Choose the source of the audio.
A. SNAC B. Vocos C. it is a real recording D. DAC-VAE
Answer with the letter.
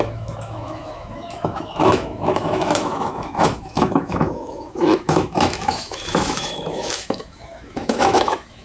D